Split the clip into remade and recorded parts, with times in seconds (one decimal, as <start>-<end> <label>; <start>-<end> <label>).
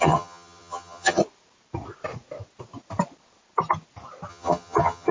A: 0.0-1.2 remade; 1.2-4.3 recorded; 4.3-5.1 remade